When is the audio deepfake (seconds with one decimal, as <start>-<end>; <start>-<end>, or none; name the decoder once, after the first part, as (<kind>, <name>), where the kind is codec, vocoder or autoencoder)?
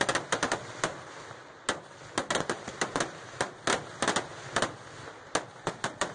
none